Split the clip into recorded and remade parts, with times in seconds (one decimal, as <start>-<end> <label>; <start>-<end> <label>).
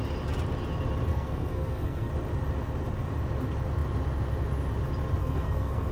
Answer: 0.0-1.1 recorded; 1.1-2.1 remade; 2.1-5.2 recorded; 5.2-5.9 remade